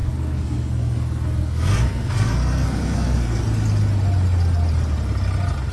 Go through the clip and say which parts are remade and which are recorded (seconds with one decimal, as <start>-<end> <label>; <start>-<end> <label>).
0.0-3.4 remade; 3.4-5.7 recorded